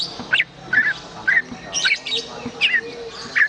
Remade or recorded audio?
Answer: recorded